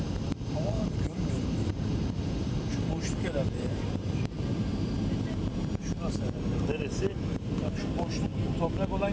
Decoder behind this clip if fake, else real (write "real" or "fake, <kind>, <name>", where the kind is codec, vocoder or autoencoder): fake, vocoder, BigVGAN v2